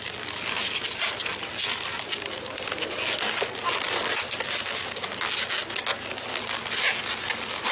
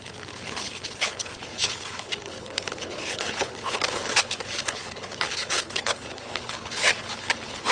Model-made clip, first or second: second